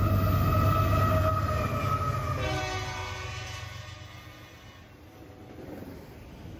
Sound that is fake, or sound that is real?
real